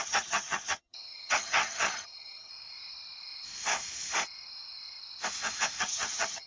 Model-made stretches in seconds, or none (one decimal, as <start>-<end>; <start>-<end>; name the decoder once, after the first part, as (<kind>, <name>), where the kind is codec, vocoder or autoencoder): 0.0-2.5 (vocoder, HiFi-GAN); 5.8-6.5